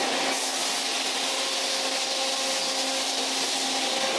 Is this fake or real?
real